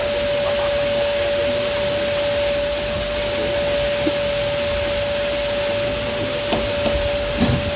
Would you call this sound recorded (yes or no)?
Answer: yes